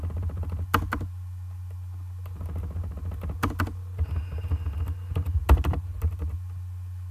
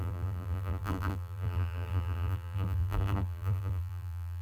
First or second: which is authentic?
first